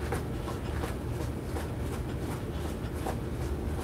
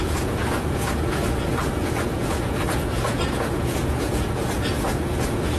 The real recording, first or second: first